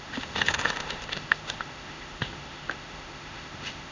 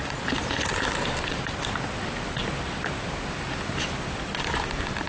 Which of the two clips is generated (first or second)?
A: first